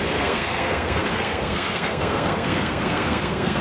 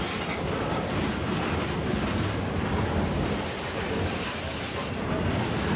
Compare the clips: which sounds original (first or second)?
second